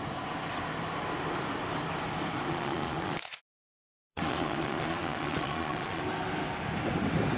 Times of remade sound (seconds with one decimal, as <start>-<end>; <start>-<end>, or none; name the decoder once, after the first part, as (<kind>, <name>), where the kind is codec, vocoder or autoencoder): 2.5-6.0 (vocoder, Vocos)